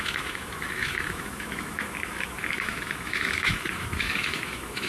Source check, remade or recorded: remade